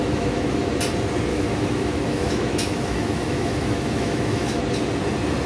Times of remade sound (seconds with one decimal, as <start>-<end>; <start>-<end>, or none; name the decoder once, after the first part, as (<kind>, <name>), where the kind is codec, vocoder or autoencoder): 0.0-0.7 (autoencoder, DAC-VAE); 1.3-4.6